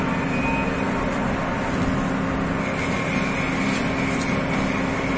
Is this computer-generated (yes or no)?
no